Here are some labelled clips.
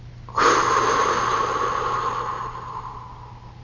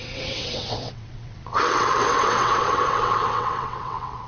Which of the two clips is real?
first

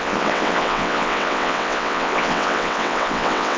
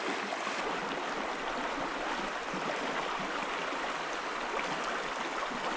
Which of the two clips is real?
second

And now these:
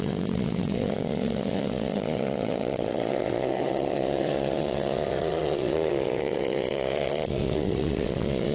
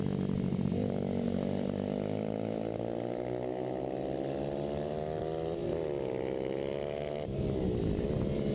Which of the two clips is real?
second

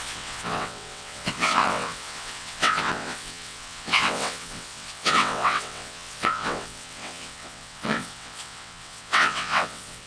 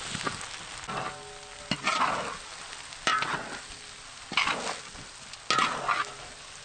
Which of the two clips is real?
second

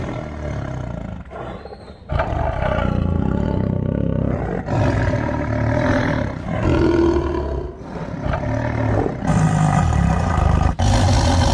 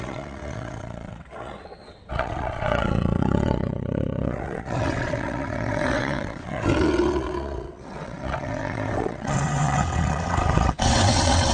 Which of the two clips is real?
first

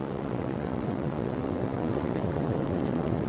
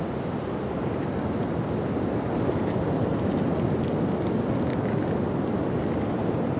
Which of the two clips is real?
second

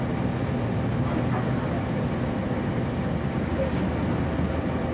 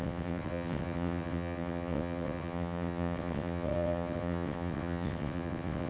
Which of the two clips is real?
first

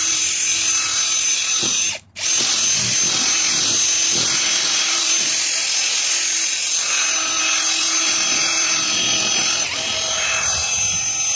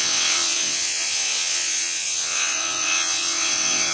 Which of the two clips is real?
first